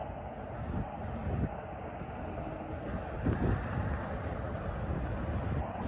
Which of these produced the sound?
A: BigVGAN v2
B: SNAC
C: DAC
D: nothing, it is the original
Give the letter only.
D